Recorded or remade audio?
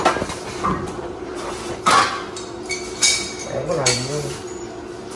recorded